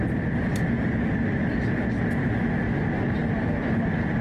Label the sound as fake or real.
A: real